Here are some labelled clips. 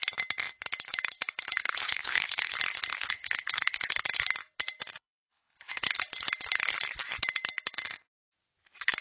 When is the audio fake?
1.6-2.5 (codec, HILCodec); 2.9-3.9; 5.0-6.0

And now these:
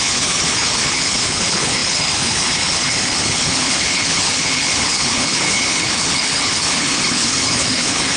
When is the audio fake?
0.0-8.2 (codec, HILCodec)